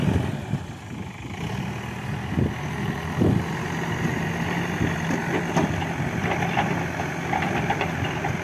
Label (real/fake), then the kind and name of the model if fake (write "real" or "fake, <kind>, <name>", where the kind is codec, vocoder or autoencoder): real